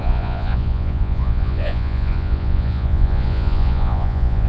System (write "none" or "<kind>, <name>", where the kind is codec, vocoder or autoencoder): vocoder, Vocos